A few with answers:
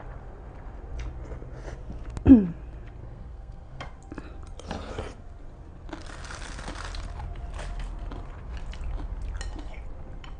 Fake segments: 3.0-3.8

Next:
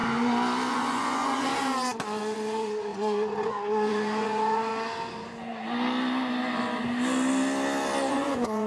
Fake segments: 0.7-1.5; 2.2-4.7; 8.1-8.7

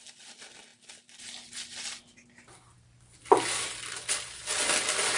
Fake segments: none

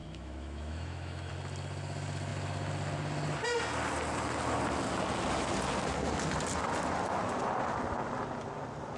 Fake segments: 0.0-1.3